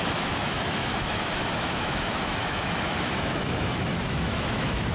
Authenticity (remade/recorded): remade